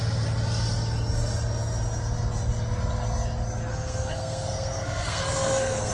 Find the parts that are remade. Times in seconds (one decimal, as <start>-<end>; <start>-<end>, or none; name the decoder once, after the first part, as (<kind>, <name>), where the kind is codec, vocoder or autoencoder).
3.7-5.9 (codec, SNAC)